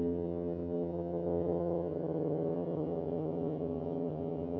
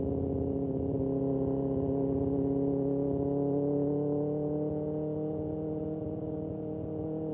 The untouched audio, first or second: second